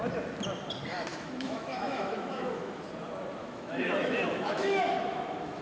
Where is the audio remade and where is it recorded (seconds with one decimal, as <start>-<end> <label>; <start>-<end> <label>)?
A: 0.0-1.1 recorded; 1.1-2.9 remade; 2.9-3.4 recorded; 3.4-5.6 remade